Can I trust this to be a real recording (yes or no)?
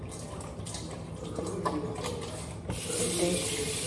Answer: yes